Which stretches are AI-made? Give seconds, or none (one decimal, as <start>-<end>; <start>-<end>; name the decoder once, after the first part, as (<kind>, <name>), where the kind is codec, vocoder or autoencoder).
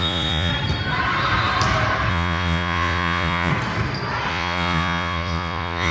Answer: 0.0-0.5 (vocoder, Vocos); 2.1-3.5; 4.3-5.9